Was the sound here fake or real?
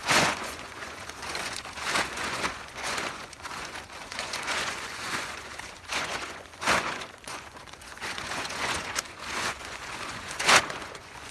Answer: fake